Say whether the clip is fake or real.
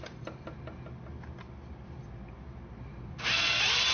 real